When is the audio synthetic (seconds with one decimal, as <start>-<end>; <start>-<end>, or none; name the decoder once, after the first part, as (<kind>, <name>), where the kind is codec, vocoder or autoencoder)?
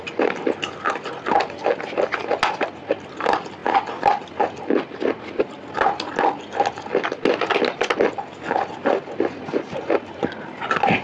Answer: none